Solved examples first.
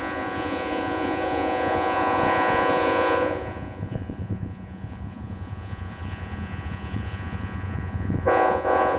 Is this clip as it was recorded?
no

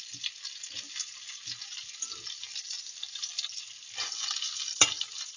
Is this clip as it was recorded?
yes